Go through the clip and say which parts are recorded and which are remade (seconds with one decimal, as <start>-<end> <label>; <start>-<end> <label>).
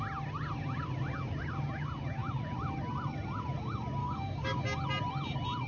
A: 0.0-4.0 recorded; 4.0-4.6 remade; 4.6-5.7 recorded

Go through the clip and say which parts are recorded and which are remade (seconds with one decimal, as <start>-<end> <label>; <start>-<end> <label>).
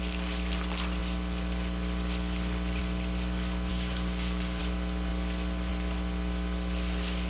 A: 0.0-3.7 recorded; 3.7-4.6 remade; 4.6-7.3 recorded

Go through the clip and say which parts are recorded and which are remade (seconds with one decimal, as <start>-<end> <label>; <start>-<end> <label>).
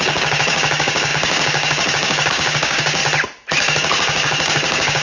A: 0.0-3.0 remade; 3.0-3.6 recorded; 3.6-5.0 remade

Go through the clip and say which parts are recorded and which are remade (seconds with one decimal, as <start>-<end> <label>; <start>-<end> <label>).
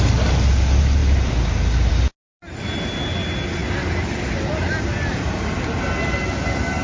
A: 0.0-6.8 recorded